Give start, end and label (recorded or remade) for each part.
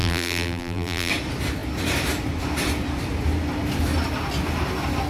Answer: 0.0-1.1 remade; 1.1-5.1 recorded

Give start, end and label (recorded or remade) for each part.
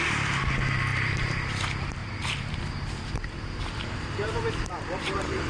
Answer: 0.0-0.9 recorded; 0.9-1.5 remade; 1.5-2.0 recorded; 2.0-5.5 remade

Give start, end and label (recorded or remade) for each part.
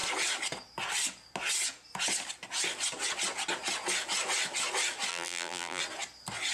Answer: 0.0-5.1 recorded; 5.1-5.8 remade; 5.8-6.5 recorded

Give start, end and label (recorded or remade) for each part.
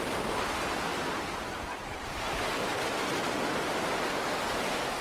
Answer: 0.0-0.9 recorded; 0.9-1.6 remade; 1.6-5.0 recorded